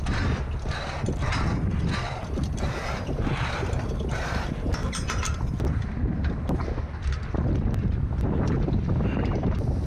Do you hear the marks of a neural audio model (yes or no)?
no